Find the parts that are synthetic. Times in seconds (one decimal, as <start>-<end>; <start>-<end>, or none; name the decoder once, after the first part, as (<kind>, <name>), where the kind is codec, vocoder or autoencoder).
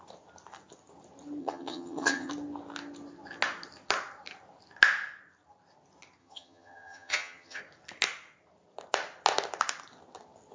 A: 1.4-2.3 (vocoder, HiFi-GAN); 6.2-7.6